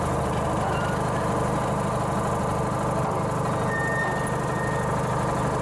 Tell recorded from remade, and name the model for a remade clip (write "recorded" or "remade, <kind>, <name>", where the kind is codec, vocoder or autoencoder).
recorded